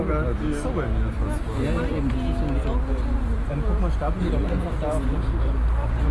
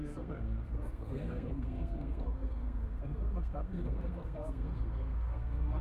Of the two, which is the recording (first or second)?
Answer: first